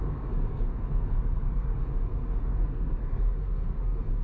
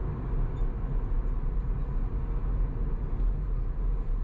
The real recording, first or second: second